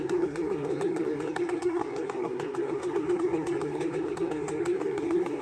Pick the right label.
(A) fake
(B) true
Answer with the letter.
A